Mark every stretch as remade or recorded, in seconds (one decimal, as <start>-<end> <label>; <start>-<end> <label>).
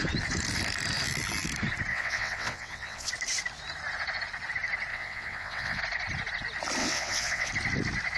0.0-1.9 recorded; 1.9-3.1 remade; 3.1-4.9 recorded; 4.9-5.8 remade; 5.8-6.8 recorded; 6.8-7.5 remade; 7.5-8.2 recorded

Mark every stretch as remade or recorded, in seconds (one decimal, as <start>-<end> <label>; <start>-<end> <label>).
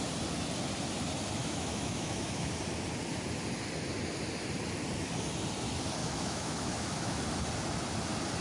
0.0-1.4 recorded; 1.4-2.5 remade; 2.5-6.0 recorded; 6.0-7.2 remade; 7.2-8.4 recorded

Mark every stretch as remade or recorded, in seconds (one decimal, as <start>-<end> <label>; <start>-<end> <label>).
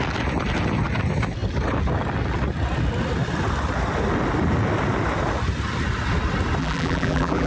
0.0-6.6 recorded; 6.6-7.5 remade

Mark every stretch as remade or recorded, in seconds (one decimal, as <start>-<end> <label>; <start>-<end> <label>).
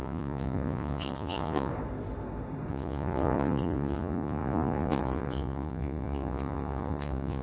0.0-1.7 remade; 1.7-2.7 recorded; 2.7-7.4 remade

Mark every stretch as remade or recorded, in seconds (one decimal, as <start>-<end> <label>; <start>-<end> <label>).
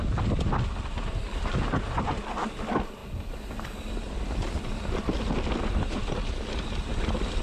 0.0-7.4 recorded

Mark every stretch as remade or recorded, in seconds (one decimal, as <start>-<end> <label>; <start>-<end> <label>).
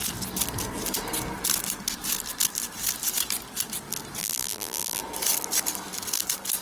0.0-4.2 recorded; 4.2-5.0 remade; 5.0-6.6 recorded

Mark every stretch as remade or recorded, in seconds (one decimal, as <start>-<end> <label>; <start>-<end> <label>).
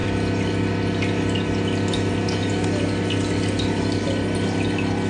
0.0-5.1 recorded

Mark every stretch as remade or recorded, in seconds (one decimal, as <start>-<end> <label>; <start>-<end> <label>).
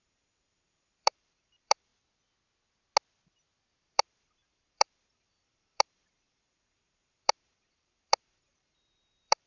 0.0-1.9 remade; 1.9-3.8 recorded; 3.8-9.5 remade